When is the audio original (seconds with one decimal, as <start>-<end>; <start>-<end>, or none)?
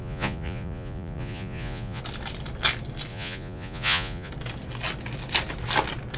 2.0-3.1; 4.3-6.2